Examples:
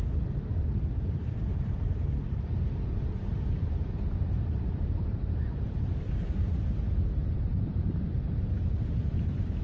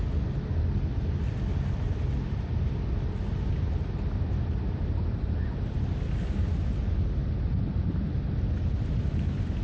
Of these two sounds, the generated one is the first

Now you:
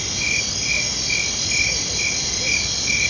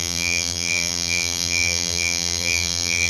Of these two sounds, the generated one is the second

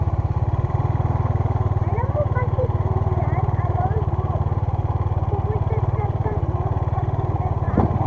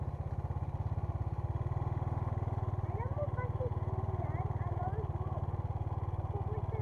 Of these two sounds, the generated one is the first